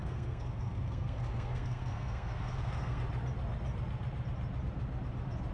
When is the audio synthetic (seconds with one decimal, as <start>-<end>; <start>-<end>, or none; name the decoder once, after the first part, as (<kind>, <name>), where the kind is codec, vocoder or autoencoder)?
0.0-3.0 (codec, SNAC)